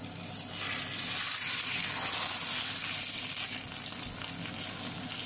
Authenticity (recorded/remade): recorded